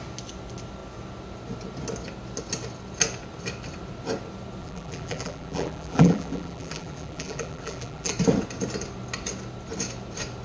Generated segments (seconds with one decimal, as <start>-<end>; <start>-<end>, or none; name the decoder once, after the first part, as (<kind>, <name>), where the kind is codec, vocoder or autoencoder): 4.6-8.1 (vocoder, BigVGAN v2)